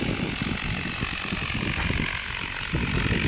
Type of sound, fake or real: real